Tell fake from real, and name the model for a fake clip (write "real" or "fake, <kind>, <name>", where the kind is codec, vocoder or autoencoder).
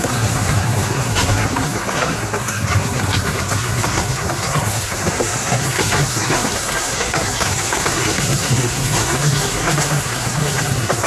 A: fake, codec, SNAC